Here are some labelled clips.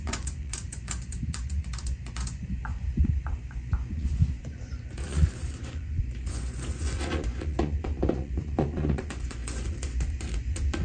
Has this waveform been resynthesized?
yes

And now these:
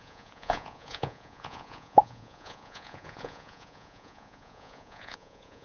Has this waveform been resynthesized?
yes